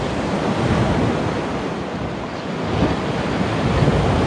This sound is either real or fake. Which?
real